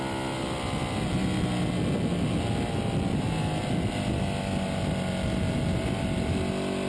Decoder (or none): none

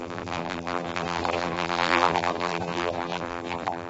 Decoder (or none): vocoder, BigVGAN v2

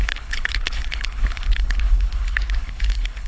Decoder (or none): codec, HILCodec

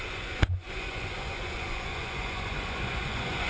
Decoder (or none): vocoder, Vocos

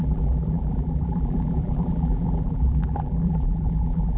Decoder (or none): vocoder, BigVGAN v2